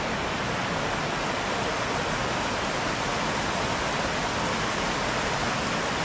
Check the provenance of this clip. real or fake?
real